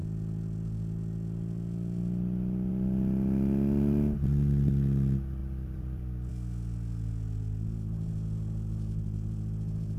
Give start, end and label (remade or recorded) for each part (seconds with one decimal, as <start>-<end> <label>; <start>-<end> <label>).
0.0-5.4 recorded; 5.4-6.3 remade; 6.3-10.0 recorded